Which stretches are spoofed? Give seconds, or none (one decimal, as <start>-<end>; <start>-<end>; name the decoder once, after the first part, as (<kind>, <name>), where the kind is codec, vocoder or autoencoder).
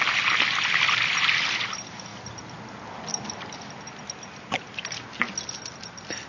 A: none